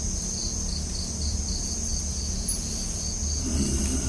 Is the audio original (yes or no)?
yes